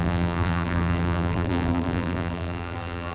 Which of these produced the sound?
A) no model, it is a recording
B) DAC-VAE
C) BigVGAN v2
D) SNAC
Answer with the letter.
C